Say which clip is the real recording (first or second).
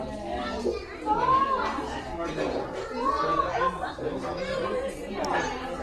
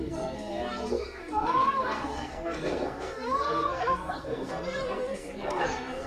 first